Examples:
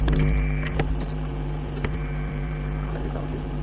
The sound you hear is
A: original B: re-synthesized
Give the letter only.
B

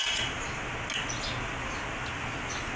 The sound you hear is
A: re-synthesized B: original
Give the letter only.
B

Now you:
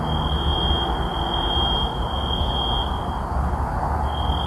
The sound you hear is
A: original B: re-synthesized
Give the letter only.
A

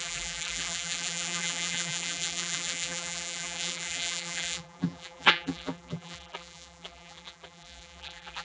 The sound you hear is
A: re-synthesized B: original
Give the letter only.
A